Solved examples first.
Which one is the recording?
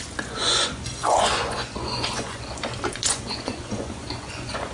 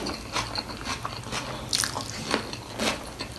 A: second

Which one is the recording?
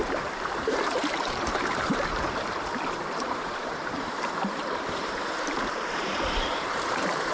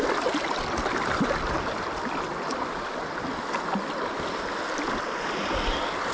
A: second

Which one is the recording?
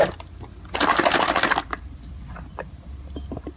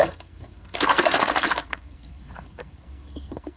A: first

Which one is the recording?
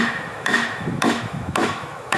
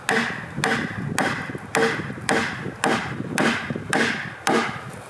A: second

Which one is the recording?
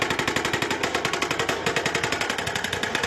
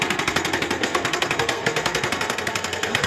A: first